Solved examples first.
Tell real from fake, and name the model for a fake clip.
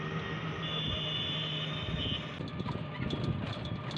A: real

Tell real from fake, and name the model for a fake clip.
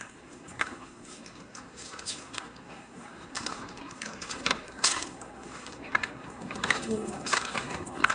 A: fake, codec, SNAC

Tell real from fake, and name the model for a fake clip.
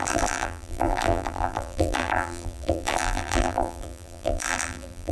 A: fake, vocoder, BigVGAN v2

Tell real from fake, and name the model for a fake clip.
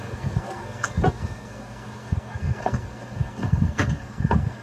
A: fake, codec, SNAC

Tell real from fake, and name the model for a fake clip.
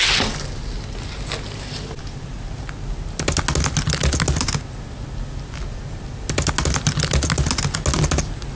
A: real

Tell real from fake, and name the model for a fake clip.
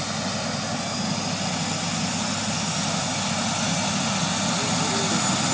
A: real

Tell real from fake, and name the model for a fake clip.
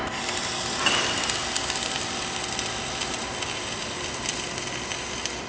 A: real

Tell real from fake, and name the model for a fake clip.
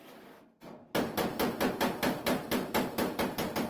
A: real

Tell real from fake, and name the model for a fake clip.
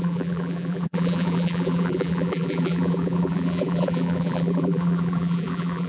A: fake, vocoder, BigVGAN v2